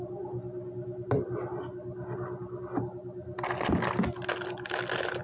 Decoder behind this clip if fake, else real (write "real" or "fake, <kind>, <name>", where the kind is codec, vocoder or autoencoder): real